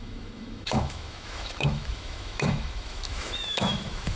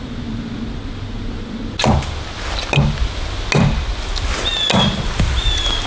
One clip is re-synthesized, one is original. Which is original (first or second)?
second